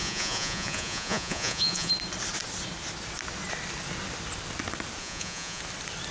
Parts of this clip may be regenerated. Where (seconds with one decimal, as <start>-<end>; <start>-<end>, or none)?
0.0-1.9; 5.0-5.6